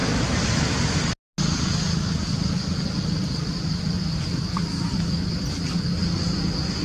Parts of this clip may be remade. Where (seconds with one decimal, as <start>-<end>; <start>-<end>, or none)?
none